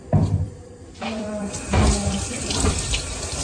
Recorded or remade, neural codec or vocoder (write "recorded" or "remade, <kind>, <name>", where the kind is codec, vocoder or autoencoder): remade, vocoder, BigVGAN v2